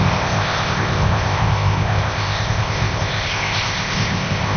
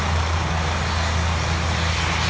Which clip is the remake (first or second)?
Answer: first